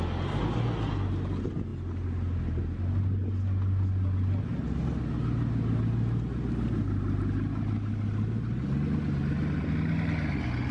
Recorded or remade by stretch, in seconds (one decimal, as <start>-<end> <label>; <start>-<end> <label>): 0.0-10.7 recorded